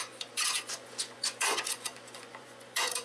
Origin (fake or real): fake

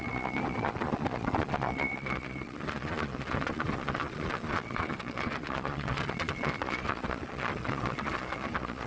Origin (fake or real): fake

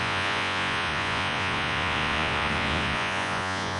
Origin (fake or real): fake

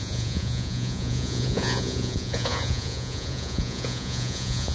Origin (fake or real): fake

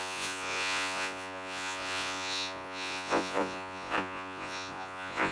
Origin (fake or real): fake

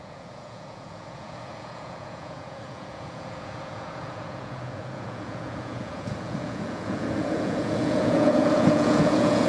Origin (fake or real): fake